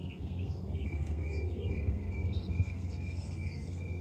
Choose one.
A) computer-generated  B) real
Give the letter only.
A